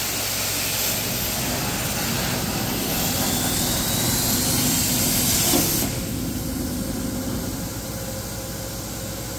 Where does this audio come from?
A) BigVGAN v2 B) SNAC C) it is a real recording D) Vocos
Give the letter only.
C